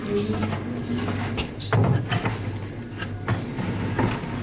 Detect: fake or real real